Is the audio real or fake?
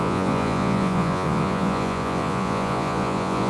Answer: fake